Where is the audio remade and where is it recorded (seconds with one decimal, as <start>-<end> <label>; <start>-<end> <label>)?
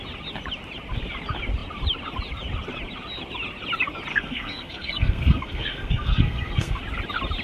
0.0-4.1 recorded; 4.1-6.8 remade; 6.8-7.4 recorded